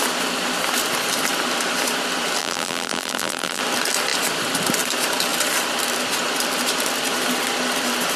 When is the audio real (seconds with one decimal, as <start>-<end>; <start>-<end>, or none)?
0.0-2.4; 3.6-8.2